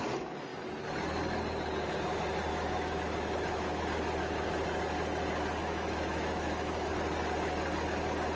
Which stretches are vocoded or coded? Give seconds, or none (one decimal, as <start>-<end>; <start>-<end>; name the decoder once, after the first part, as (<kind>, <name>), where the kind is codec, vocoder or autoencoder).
2.5-3.8 (autoencoder, DAC-VAE); 5.6-6.9